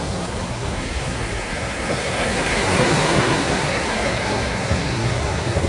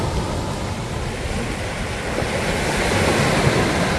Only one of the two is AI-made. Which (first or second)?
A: first